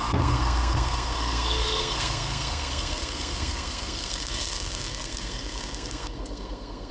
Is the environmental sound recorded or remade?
remade